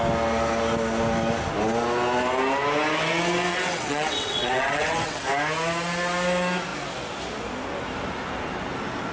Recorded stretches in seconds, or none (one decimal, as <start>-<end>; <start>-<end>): 0.0-3.5; 5.2-9.1